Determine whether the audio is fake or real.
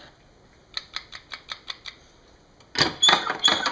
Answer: real